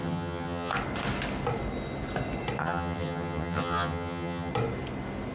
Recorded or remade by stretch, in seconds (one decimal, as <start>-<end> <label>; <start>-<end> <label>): 0.0-0.7 remade; 0.7-2.6 recorded; 2.6-4.5 remade; 4.5-5.3 recorded